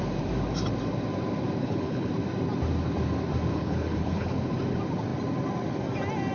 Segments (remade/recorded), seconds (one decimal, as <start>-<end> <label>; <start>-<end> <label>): 0.0-1.6 recorded; 1.6-2.1 remade; 2.1-3.5 recorded; 3.5-4.5 remade; 4.5-6.3 recorded